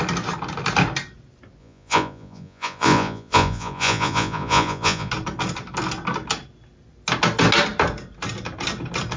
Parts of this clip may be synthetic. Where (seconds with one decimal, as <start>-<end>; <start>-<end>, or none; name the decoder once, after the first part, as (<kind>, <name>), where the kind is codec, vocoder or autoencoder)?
1.6-5.1 (vocoder, Vocos)